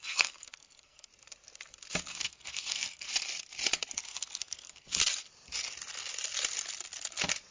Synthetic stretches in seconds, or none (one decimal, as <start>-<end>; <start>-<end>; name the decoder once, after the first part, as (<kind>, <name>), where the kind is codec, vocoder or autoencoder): 0.0-1.1 (codec, SNAC); 2.1-3.1; 3.9-5.0